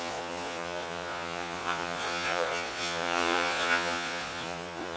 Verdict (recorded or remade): remade